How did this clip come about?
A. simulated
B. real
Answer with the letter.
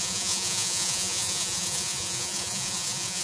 A